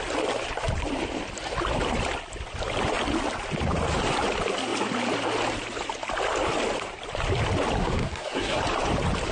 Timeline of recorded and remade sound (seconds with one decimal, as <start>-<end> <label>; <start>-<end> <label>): 0.0-7.8 recorded; 7.8-8.6 remade; 8.6-9.3 recorded